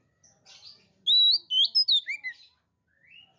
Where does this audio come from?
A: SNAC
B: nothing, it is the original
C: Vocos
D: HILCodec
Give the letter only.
B